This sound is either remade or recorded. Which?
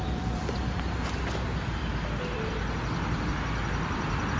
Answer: recorded